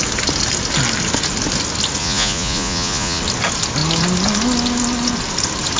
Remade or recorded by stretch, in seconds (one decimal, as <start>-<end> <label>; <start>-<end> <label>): 0.0-2.0 recorded; 2.0-3.2 remade; 3.2-5.8 recorded